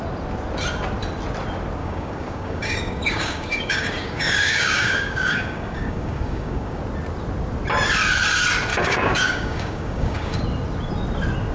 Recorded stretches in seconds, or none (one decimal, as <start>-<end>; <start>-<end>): 0.0-1.8; 6.8-8.7; 10.4-11.5